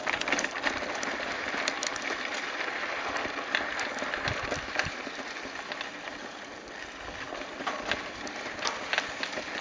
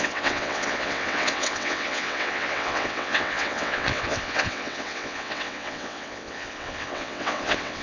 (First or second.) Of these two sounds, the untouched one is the first